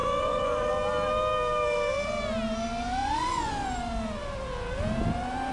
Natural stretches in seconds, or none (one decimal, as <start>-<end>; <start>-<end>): 0.7-3.0; 3.5-5.5

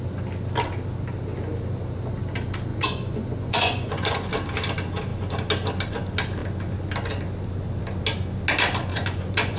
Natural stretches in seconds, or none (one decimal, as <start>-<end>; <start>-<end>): 0.0-2.7; 4.3-8.9

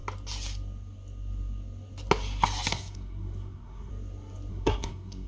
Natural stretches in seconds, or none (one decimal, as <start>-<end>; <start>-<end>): 0.0-2.7; 3.9-4.5

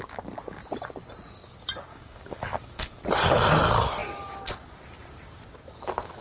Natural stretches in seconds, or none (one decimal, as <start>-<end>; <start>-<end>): 0.0-1.9; 3.0-6.2

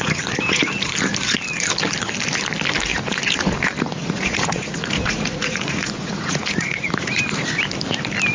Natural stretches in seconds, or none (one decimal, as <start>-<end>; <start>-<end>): 0.0-2.9; 7.2-8.3

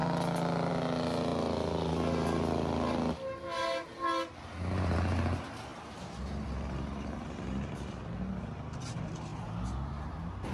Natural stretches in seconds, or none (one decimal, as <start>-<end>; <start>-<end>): 0.0-10.5